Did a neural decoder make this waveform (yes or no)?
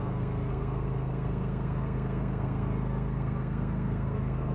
yes